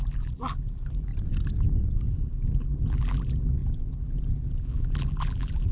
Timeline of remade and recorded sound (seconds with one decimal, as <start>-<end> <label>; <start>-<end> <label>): 0.0-1.1 remade; 1.1-2.1 recorded; 2.1-5.7 remade